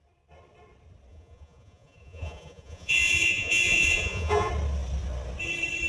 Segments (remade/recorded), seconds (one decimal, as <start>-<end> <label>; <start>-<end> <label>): 0.0-1.1 recorded; 1.1-4.5 remade; 4.5-5.9 recorded